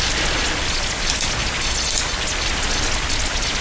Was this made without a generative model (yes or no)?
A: yes